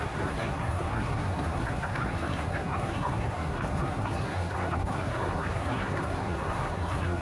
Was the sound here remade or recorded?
remade